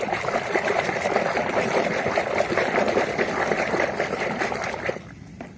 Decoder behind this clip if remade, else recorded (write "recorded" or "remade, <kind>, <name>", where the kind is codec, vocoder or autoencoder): remade, vocoder, BigVGAN v2